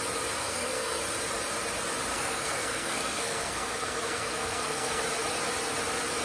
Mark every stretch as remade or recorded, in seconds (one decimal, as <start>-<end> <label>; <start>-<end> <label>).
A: 0.0-0.4 recorded; 0.4-1.0 remade; 1.0-2.1 recorded; 2.1-5.0 remade; 5.0-6.2 recorded